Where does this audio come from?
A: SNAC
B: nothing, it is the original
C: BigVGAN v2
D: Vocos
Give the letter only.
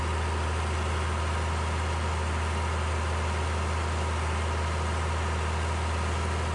B